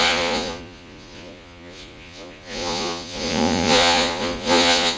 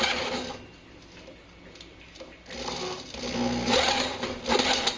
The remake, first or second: first